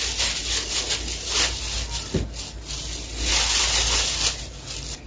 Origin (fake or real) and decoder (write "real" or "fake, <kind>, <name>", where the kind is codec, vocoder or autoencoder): real